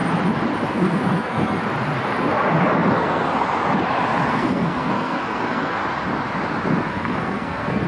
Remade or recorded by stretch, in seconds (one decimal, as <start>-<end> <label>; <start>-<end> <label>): 0.0-0.7 recorded; 0.7-1.6 remade; 1.6-2.9 recorded; 2.9-3.3 remade; 3.3-4.3 recorded; 4.3-5.8 remade; 5.8-6.9 recorded; 6.9-7.9 remade